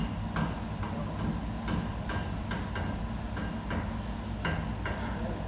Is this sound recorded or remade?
recorded